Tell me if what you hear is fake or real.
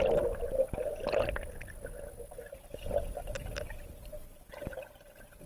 real